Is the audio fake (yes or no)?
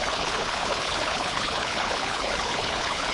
yes